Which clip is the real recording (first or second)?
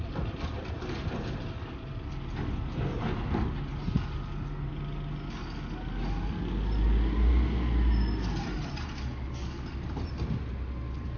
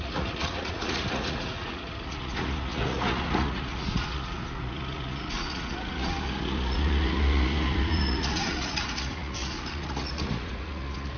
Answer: first